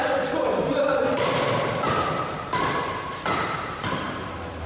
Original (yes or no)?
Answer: no